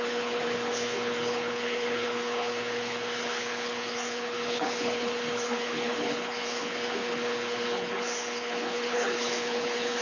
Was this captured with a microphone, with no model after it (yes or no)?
no